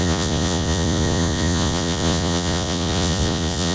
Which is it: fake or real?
fake